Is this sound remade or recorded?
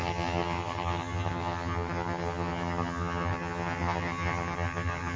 remade